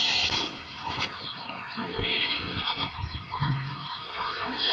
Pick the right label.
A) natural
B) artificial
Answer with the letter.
B